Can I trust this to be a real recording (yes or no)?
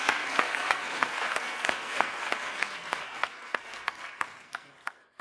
no